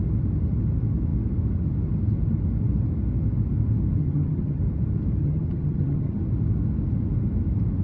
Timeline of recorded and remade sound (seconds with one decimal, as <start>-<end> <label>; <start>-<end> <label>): 0.0-4.0 recorded; 4.0-4.6 remade; 4.6-5.2 recorded; 5.2-6.2 remade; 6.2-7.8 recorded